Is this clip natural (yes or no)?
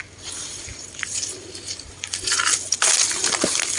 yes